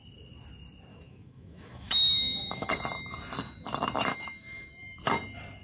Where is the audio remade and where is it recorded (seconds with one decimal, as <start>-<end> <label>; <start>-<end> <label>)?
0.0-0.9 recorded; 0.9-2.7 remade; 2.7-4.1 recorded; 4.1-5.0 remade; 5.0-5.6 recorded